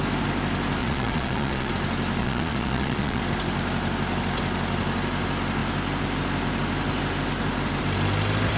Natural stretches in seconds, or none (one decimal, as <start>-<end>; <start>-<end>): 0.0-0.8; 1.7-2.2; 3.2-8.6